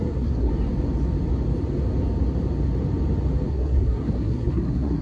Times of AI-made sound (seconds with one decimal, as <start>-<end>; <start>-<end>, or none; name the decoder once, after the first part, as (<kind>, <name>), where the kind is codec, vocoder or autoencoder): 0.0-0.5 (codec, SNAC); 3.5-5.0